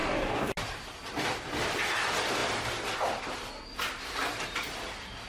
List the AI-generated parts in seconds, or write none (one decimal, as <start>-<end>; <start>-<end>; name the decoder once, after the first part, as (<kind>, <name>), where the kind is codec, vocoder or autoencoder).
0.0-0.5 (codec, DAC)